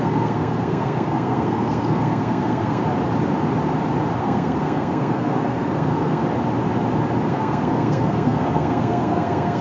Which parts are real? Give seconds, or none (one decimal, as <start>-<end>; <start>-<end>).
2.8-4.2; 6.2-7.3